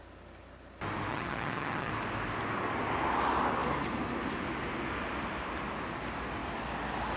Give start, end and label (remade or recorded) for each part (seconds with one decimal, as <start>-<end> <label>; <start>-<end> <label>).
0.0-1.1 recorded; 1.1-1.9 remade; 1.9-7.2 recorded